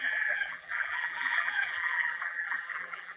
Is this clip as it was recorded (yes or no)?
no